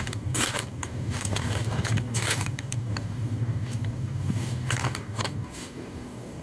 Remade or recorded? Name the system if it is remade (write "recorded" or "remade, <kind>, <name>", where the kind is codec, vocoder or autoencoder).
remade, codec, DAC